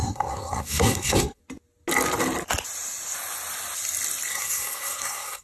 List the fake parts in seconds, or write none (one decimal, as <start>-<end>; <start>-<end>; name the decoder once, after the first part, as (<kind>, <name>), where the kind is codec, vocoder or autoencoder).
0.0-1.4 (codec, SNAC); 4.3-5.4